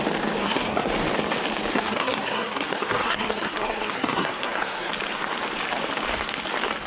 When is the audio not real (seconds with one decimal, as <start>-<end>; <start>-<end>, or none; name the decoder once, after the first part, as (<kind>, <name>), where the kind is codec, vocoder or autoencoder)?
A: 0.4-0.9 (codec, SNAC); 1.7-4.9

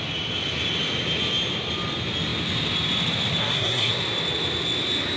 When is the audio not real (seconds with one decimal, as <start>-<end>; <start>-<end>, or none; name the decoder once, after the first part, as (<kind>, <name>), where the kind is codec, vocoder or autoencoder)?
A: 3.4-3.9 (codec, SNAC)

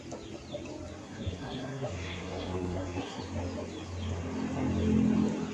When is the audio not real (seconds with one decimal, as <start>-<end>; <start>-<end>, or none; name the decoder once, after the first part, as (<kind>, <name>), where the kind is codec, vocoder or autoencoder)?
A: 1.0-3.2 (codec, SNAC)

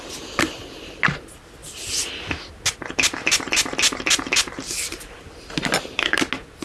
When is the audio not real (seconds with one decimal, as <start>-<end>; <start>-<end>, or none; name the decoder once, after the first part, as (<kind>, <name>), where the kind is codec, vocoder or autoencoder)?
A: none

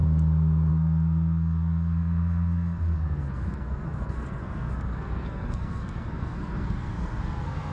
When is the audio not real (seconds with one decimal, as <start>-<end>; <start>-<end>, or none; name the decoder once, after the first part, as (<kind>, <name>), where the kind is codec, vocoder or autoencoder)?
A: 0.7-7.7 (codec, SNAC)

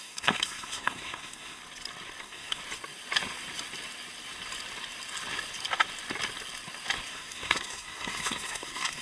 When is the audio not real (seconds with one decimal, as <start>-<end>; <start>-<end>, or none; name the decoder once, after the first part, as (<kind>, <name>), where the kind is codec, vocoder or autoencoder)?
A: 0.0-1.6 (codec, SNAC); 2.2-2.6; 7.1-9.0

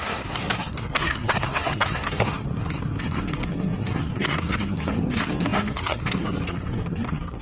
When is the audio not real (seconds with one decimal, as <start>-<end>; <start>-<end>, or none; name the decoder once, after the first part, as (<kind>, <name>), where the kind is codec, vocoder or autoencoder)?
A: 0.0-7.4 (codec, SNAC)

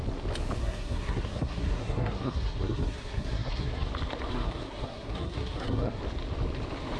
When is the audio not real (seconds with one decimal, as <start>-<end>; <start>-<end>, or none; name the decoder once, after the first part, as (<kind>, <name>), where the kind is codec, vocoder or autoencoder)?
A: 0.6-3.9 (codec, SNAC); 4.3-6.0